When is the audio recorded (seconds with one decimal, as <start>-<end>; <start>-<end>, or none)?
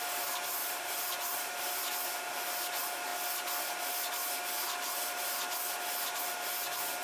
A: 0.0-0.6; 1.9-7.0